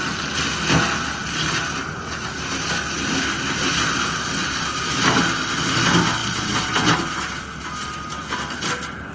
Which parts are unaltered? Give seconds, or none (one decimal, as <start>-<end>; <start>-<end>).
0.0-9.1